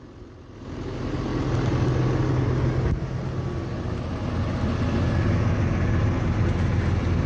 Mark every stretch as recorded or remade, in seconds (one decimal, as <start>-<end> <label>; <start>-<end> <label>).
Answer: 0.0-7.3 recorded